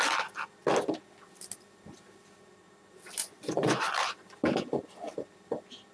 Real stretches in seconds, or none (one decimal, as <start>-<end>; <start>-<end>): 0.0-3.2; 3.9-5.9